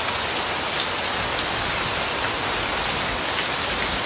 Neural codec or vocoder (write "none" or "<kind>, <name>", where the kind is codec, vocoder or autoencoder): none